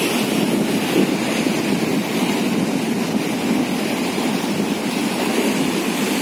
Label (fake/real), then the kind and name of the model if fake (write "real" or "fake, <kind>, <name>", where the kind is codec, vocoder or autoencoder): real